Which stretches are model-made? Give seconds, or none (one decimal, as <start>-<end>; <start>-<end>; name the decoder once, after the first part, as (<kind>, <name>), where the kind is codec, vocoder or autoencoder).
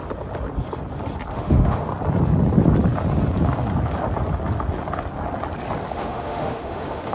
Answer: 1.3-1.9 (autoencoder, DAC-VAE); 5.9-7.1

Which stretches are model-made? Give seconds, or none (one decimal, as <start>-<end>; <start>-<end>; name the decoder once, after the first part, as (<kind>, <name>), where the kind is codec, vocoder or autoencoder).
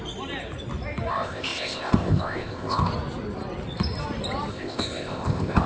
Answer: 1.1-2.9 (codec, ZipCodec); 4.5-5.7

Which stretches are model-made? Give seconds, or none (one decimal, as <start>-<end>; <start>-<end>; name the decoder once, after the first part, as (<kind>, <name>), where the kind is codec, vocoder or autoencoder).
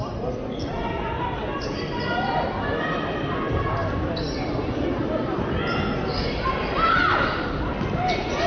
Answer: none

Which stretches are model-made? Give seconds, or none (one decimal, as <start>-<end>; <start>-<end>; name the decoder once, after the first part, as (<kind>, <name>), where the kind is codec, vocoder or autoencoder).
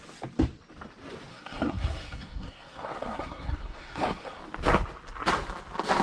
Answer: 1.3-4.4 (codec, SNAC)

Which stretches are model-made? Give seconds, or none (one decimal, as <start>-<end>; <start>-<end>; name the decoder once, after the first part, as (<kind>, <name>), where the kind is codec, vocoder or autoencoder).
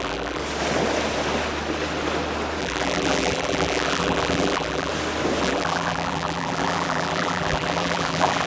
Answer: 0.0-0.4 (vocoder, BigVGAN v2); 2.6-4.9; 5.4-8.5